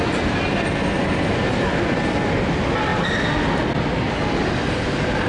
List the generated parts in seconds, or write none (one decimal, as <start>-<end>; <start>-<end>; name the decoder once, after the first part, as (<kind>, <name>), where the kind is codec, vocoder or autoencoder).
none